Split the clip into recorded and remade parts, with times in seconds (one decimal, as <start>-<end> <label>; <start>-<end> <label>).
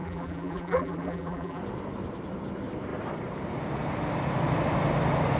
0.0-1.6 remade; 1.6-5.4 recorded